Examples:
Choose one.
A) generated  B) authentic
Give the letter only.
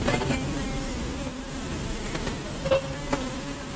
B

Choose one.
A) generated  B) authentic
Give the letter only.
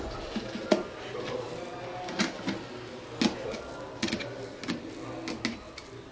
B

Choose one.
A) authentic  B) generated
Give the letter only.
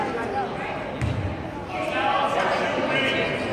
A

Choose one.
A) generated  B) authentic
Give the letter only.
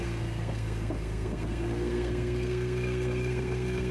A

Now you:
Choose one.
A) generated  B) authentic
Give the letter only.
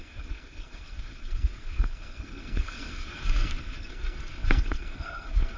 A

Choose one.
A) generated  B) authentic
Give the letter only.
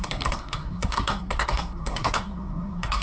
A